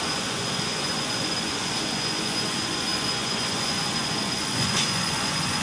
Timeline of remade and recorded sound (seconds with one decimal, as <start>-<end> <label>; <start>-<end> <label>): 0.0-5.6 remade